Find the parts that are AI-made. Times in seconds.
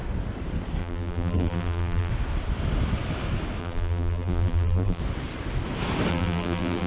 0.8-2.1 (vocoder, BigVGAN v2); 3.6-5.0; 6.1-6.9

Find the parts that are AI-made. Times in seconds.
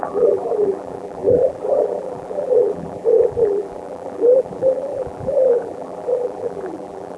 0.0-7.2 (vocoder, BigVGAN v2)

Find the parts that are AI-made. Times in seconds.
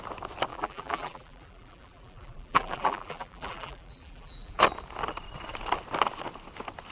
0.5-4.6 (vocoder, BigVGAN v2)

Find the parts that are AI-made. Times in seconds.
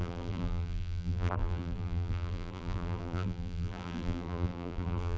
0.0-5.2 (vocoder, BigVGAN v2)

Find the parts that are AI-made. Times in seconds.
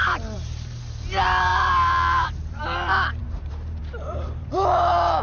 0.0-5.2 (vocoder, BigVGAN v2)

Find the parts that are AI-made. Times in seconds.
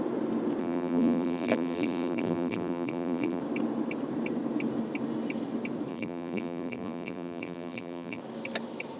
0.6-3.4 (vocoder, BigVGAN v2); 5.9-8.2